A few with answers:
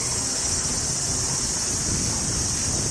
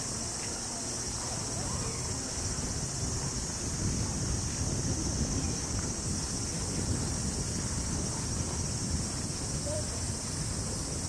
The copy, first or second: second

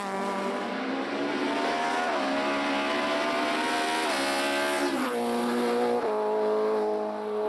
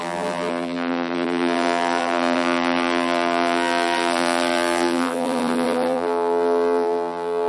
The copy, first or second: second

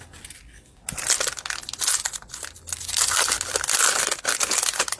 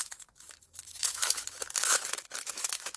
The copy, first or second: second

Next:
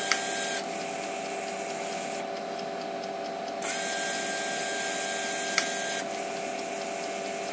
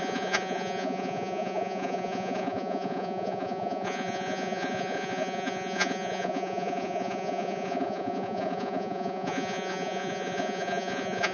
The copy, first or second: second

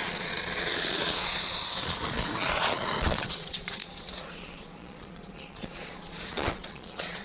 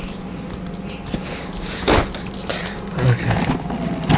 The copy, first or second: first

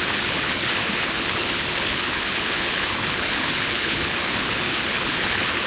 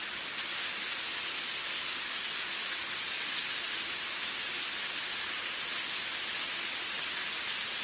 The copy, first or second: first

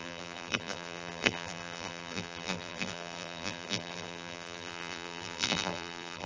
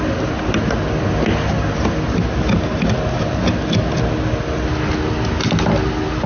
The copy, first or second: first